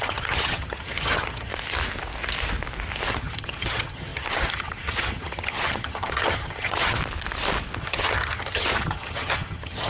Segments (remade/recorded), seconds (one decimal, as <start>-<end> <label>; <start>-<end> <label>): 0.0-1.5 remade; 1.5-3.1 recorded; 3.1-7.0 remade; 7.0-7.8 recorded; 7.8-9.9 remade